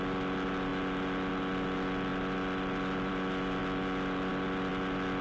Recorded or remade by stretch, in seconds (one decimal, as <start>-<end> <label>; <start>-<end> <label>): 0.0-5.2 recorded